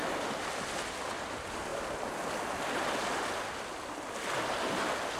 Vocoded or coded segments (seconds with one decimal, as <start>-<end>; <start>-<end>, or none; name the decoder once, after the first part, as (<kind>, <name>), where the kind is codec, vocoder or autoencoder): none